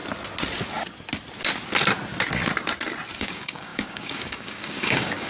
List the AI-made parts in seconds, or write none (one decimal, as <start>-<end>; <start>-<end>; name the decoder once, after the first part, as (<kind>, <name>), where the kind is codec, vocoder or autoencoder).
3.2-5.3 (codec, DAC)